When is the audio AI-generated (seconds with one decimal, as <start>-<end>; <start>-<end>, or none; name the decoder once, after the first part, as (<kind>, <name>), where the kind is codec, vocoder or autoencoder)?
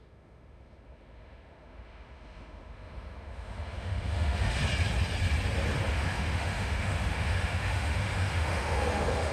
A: 0.0-4.6 (autoencoder, DAC-VAE); 5.9-9.3